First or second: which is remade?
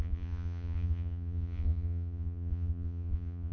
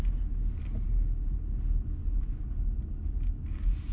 first